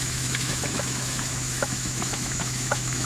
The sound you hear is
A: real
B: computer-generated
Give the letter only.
B